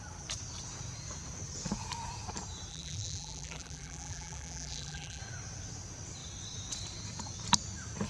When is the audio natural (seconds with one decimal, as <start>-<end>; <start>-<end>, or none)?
0.0-2.7; 5.2-8.1

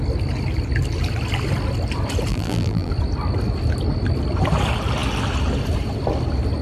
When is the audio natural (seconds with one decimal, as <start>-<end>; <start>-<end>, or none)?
0.0-2.3; 2.9-6.6

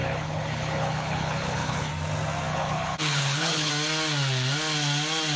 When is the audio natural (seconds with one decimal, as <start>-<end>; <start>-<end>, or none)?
1.9-2.5; 3.7-5.4

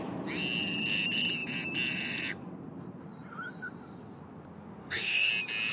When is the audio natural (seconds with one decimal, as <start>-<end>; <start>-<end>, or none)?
0.0-4.8; 5.3-5.7